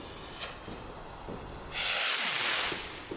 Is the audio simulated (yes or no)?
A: no